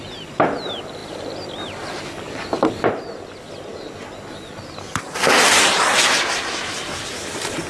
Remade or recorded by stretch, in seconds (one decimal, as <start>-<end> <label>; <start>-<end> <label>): 0.0-3.7 remade; 3.7-4.6 recorded; 4.6-7.7 remade